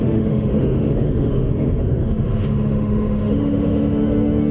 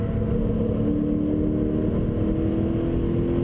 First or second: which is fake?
first